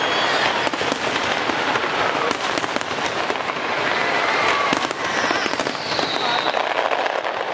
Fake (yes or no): no